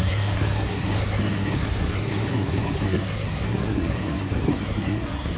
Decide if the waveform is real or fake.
fake